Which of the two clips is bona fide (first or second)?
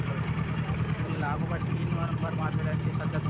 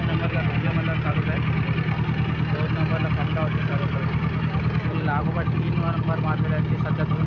second